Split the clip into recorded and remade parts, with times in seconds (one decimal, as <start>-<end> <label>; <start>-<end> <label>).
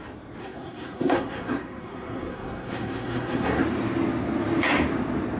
0.0-0.4 recorded; 0.4-3.6 remade; 3.6-5.4 recorded